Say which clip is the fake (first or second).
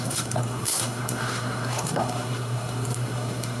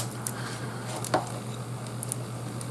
first